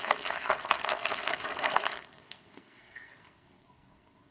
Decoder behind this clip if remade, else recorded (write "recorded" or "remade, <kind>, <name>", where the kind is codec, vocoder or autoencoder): remade, codec, SNAC